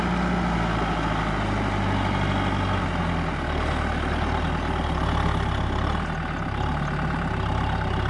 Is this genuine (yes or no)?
yes